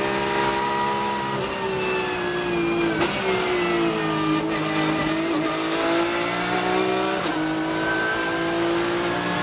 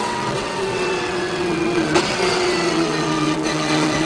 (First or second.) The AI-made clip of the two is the second